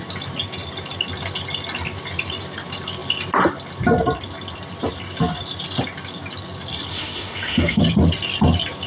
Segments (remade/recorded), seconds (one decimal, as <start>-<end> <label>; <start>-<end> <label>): 0.0-6.9 recorded; 6.9-7.8 remade; 7.8-8.9 recorded